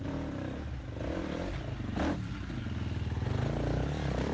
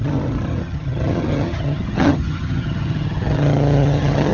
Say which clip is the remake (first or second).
second